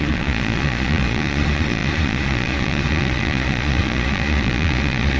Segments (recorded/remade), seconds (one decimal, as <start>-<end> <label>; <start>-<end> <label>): 0.0-5.2 remade